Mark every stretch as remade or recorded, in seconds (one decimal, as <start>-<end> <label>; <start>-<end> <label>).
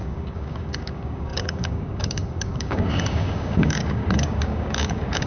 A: 0.0-5.3 remade